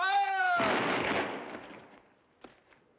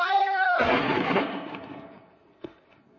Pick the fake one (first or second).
second